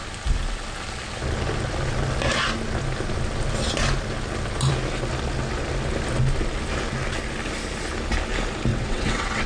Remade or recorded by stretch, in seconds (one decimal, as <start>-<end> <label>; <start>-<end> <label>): 0.0-8.7 recorded; 8.7-9.5 remade

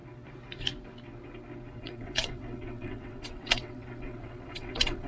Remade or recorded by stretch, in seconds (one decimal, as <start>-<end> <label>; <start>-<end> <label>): 0.0-1.8 recorded; 1.8-5.1 remade

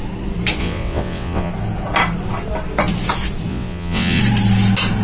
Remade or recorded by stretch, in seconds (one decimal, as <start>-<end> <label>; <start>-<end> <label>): 0.0-0.6 recorded; 0.6-1.5 remade; 1.5-3.5 recorded; 3.5-4.2 remade; 4.2-5.0 recorded

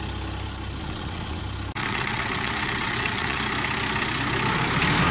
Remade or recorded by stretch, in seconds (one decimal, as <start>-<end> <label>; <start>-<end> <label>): 0.0-0.8 recorded; 0.8-1.4 remade; 1.4-1.8 recorded; 1.8-3.4 remade; 3.4-5.1 recorded

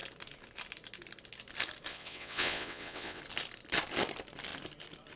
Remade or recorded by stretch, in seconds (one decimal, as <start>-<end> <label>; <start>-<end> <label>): 0.0-1.9 recorded; 1.9-3.2 remade; 3.2-5.2 recorded

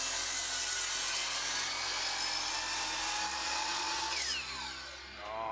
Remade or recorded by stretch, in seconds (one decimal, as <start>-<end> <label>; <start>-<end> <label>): 0.0-3.4 recorded; 3.4-4.0 remade; 4.0-5.5 recorded

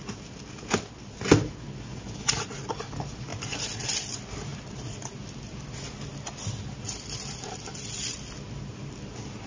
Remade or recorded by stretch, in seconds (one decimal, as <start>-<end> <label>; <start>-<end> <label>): 0.0-9.5 recorded

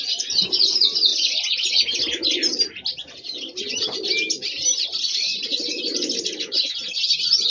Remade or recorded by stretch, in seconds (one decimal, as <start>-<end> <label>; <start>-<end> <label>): 0.0-7.5 recorded